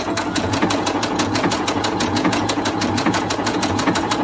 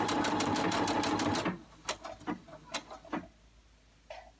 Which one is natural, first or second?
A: second